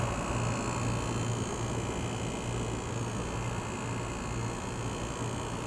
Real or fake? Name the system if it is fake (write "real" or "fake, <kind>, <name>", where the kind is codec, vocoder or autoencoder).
real